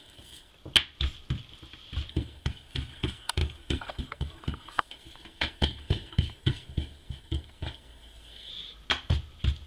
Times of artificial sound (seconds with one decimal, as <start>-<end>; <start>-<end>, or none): 0.0-0.5; 2.1-8.5